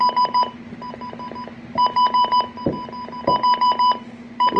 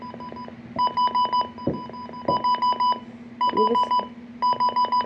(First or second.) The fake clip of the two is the first